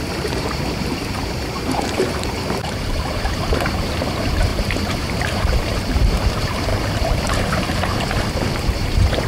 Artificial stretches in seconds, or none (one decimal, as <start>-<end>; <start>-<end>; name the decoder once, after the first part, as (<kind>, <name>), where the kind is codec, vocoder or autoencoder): 0.0-6.7 (vocoder, BigVGAN v2); 7.3-9.3